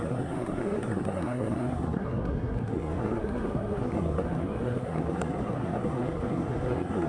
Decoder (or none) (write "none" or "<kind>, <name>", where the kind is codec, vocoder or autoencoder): codec, SNAC